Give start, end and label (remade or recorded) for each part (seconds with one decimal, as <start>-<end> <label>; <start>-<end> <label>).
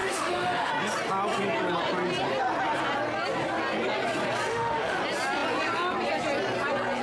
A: 0.0-0.7 remade; 0.7-4.5 recorded; 4.5-5.0 remade; 5.0-7.0 recorded